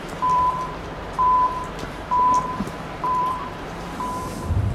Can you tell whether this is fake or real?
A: fake